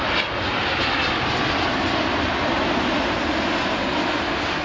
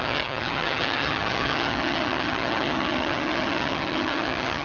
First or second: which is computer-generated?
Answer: second